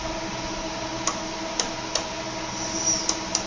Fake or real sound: real